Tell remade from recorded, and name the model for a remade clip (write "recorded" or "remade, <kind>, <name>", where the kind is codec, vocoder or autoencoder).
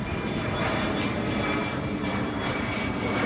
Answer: remade, vocoder, BigVGAN v2